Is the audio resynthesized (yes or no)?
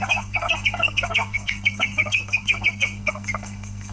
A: yes